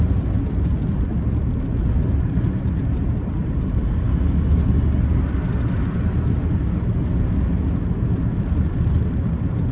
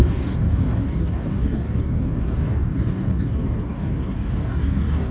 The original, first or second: first